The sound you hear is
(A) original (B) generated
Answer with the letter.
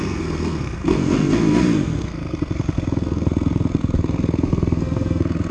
B